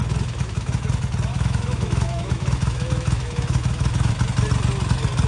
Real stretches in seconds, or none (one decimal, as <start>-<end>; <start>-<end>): 0.9-1.3; 4.1-5.3